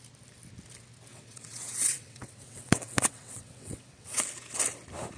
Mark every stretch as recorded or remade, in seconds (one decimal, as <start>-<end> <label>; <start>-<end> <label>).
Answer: 0.0-1.1 recorded; 1.1-4.2 remade; 4.2-5.2 recorded